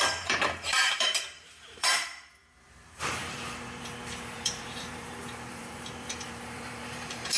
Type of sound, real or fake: fake